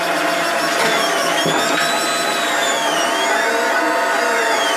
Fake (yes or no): no